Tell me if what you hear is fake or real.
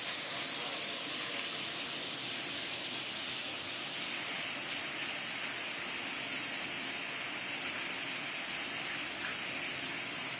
real